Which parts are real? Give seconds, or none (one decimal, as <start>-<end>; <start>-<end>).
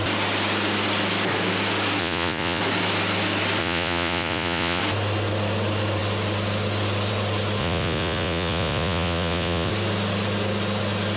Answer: 0.0-2.0; 2.6-3.6; 4.8-7.6; 9.7-11.2